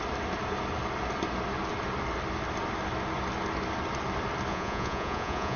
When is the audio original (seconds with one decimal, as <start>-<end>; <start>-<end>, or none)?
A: 0.0-4.5

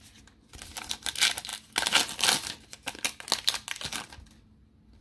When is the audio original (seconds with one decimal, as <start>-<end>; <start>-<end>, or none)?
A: 0.0-5.0

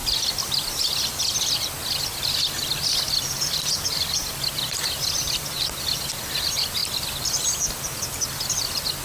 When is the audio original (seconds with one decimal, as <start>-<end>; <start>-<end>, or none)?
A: 0.0-9.0

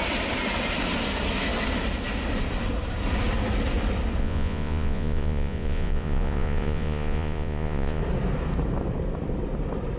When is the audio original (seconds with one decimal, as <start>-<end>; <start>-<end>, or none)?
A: 0.0-4.2; 8.0-10.0

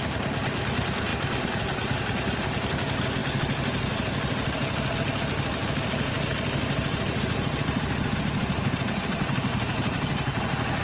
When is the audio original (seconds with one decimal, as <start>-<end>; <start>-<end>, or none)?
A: 0.0-10.8

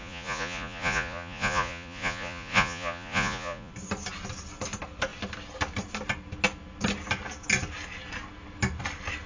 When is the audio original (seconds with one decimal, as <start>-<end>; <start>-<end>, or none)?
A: 3.7-9.3